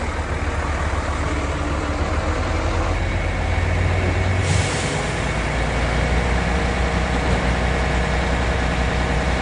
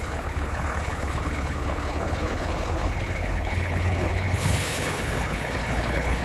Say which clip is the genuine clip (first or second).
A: first